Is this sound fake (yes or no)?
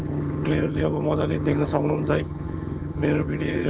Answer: yes